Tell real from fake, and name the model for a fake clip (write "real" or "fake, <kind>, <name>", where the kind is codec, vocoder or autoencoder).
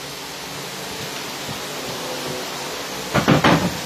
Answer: real